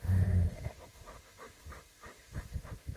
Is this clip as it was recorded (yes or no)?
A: no